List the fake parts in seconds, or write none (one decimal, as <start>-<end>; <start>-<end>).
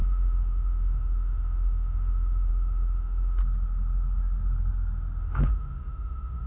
0.0-3.4; 5.2-6.5